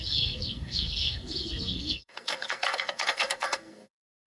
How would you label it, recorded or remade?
remade